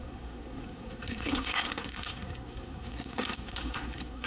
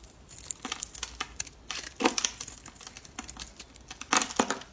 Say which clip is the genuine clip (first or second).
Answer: second